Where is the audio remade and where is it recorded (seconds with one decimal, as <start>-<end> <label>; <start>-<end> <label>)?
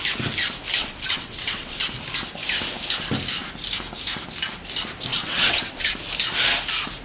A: 0.0-0.8 recorded; 0.8-1.8 remade; 1.8-5.1 recorded; 5.1-5.9 remade; 5.9-7.0 recorded